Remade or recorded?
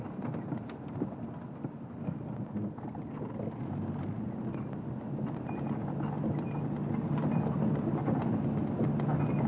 recorded